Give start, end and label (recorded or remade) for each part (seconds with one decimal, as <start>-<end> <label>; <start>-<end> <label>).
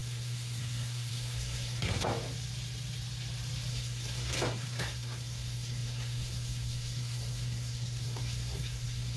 0.0-2.1 remade; 2.1-3.7 recorded; 3.7-9.2 remade